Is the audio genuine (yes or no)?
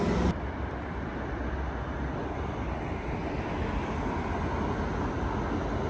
yes